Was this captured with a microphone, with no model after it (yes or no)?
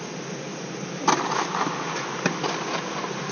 yes